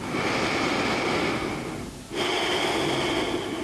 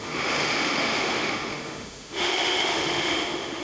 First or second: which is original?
first